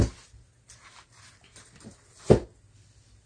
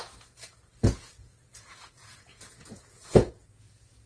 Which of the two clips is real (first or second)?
first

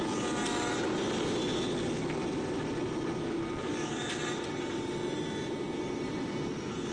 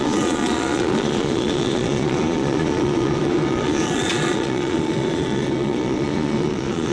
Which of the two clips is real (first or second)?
first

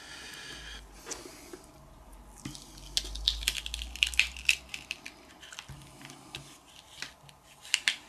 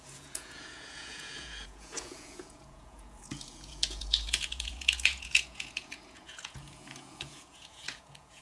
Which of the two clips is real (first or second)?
first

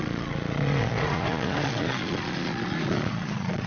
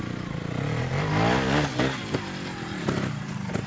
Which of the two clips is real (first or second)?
second